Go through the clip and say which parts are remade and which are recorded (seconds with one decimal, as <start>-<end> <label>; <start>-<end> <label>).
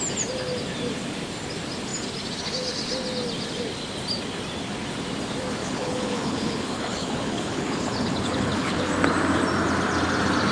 0.0-5.6 recorded; 5.6-8.9 remade; 8.9-10.5 recorded